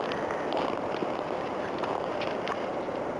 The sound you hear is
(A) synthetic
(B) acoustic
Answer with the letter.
B